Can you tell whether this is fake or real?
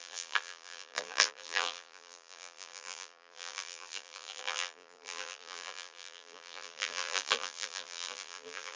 fake